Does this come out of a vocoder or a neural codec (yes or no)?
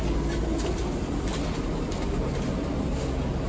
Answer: no